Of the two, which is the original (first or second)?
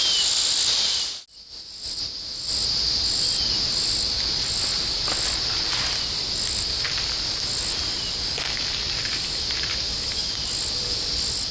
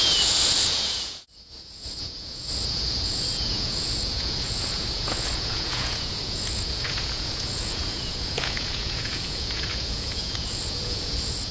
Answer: first